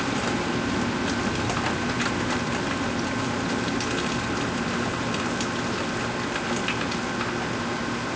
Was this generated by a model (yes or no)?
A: no